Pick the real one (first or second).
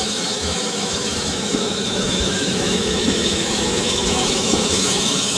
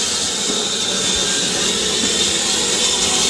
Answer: second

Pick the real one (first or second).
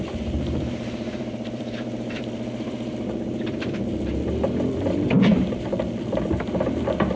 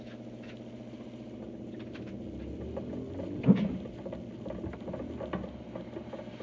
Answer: second